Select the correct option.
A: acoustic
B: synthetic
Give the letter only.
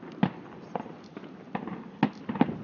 A